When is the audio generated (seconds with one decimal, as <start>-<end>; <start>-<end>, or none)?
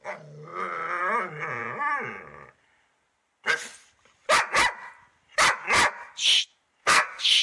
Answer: 6.8-7.4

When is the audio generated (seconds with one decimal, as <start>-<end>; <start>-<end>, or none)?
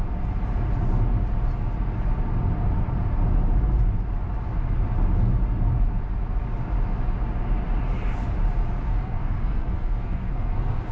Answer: 9.0-10.9